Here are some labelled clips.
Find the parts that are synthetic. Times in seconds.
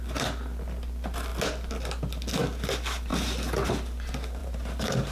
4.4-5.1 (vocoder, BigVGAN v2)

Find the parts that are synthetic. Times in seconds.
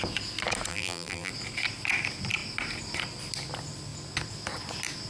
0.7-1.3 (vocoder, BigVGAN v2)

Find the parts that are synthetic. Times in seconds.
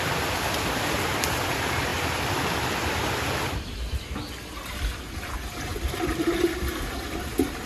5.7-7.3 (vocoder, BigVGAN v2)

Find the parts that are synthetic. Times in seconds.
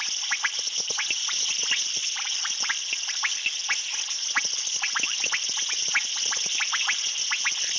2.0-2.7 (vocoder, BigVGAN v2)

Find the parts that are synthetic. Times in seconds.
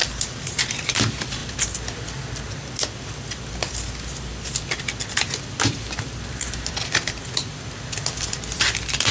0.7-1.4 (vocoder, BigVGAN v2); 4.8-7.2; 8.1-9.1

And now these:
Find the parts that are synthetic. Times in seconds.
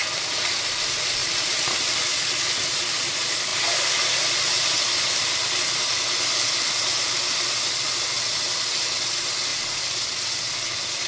1.2-2.9 (vocoder, BigVGAN v2); 3.5-4.3; 9.5-10.5